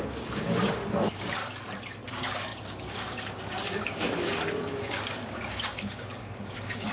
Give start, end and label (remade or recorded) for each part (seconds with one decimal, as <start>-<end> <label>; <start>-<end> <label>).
0.0-1.4 remade; 1.4-2.1 recorded; 2.1-6.9 remade